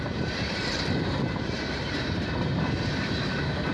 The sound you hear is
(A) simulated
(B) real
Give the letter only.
A